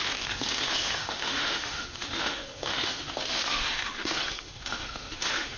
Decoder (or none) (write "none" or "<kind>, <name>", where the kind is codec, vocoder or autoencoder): autoencoder, DAC-VAE